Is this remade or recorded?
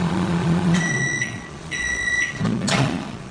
remade